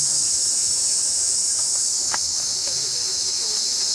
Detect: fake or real fake